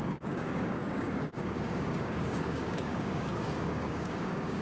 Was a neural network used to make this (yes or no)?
yes